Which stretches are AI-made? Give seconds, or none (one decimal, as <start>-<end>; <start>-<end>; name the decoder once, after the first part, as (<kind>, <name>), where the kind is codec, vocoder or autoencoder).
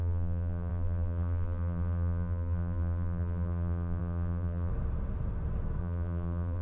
0.0-4.7 (vocoder, BigVGAN v2); 5.8-6.6